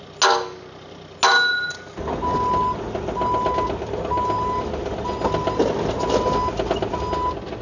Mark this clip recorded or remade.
recorded